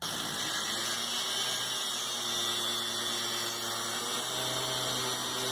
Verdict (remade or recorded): recorded